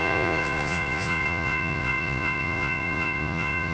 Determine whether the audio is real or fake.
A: fake